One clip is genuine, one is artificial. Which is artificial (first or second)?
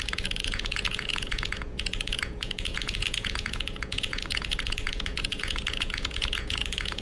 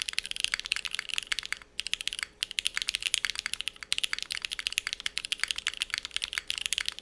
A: first